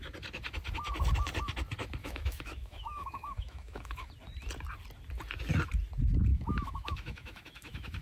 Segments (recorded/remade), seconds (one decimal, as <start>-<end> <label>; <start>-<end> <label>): 0.0-2.0 recorded; 2.0-4.1 remade; 4.1-6.3 recorded; 6.3-8.0 remade